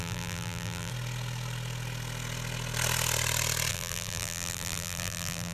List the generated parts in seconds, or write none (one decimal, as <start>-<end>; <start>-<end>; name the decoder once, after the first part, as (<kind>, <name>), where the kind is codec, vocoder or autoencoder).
0.0-0.9 (vocoder, BigVGAN v2); 3.7-5.5